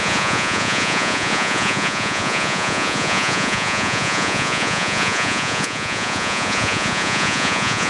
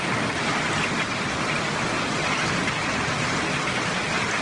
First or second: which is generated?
first